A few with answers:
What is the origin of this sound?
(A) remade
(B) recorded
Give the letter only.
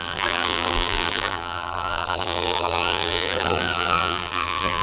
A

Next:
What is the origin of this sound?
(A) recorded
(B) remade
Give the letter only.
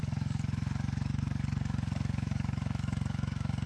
B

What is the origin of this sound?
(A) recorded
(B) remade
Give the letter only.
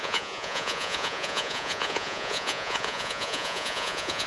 B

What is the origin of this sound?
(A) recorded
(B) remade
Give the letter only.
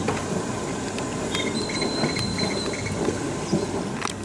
A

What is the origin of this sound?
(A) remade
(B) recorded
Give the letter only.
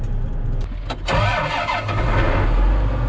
B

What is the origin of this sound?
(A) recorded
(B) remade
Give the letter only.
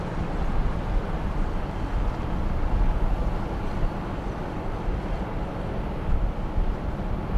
A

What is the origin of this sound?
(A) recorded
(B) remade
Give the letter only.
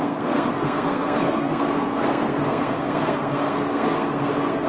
B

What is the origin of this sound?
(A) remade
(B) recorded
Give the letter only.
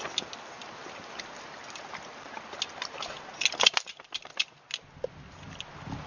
B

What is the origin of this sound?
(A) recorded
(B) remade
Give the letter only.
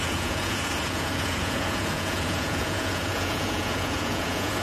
B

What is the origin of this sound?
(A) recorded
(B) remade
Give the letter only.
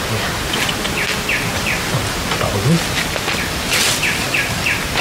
A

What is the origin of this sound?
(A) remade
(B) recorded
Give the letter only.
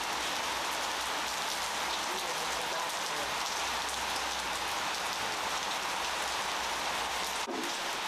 B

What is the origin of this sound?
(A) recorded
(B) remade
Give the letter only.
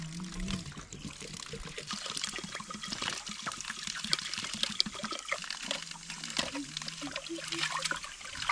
A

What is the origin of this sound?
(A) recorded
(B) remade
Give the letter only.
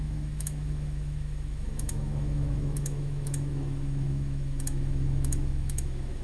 B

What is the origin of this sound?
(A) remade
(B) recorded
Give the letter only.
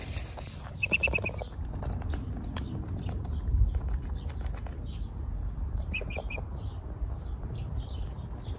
B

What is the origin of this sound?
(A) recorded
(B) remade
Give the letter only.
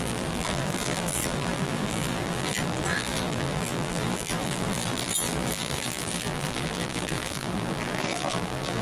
B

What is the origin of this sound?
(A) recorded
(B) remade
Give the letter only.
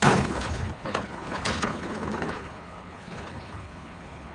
B